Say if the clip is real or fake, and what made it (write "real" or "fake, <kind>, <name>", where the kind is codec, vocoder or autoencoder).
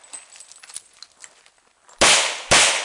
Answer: real